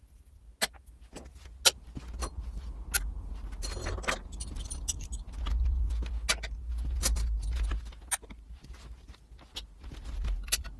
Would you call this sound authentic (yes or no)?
yes